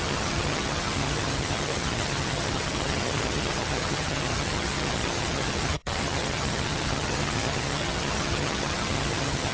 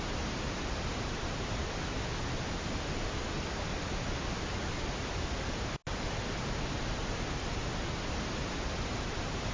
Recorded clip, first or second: second